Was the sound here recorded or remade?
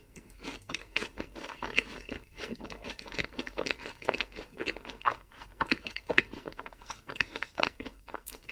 remade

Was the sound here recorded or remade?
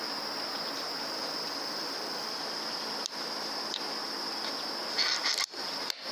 recorded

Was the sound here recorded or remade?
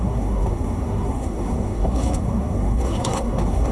remade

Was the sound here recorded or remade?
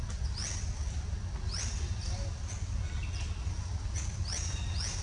recorded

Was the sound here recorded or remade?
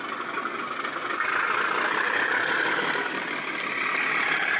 recorded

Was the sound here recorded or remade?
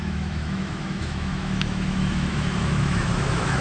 remade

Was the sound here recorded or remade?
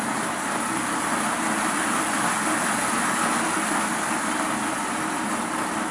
recorded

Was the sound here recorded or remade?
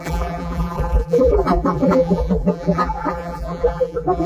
remade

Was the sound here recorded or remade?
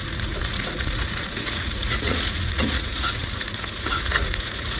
remade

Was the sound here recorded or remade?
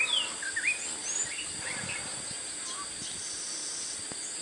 recorded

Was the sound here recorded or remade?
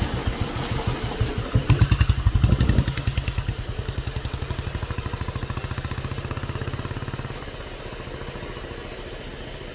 recorded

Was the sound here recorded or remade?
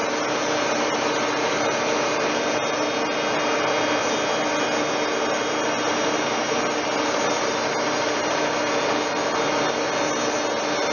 recorded